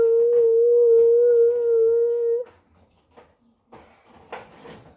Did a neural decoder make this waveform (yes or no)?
no